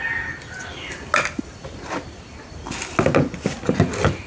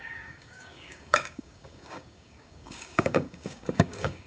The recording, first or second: first